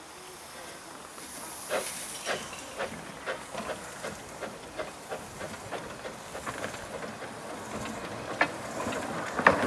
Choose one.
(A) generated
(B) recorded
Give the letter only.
B